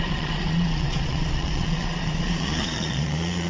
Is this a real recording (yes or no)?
no